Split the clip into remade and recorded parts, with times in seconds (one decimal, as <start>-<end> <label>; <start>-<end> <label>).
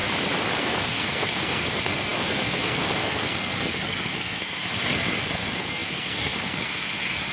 0.0-0.6 recorded; 0.6-7.3 remade